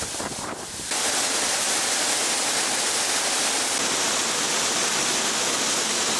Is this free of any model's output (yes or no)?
yes